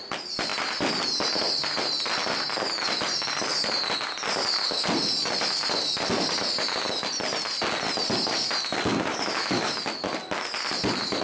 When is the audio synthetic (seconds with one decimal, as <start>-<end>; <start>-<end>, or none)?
9.1-9.7